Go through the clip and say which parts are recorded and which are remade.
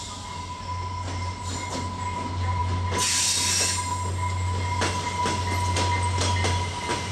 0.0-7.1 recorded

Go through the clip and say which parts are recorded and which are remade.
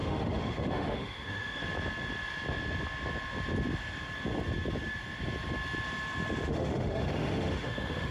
0.0-1.6 remade; 1.6-6.5 recorded; 6.5-8.1 remade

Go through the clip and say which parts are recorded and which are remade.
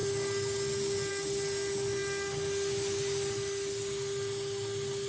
0.0-5.1 recorded